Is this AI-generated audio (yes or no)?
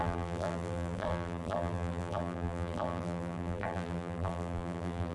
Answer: yes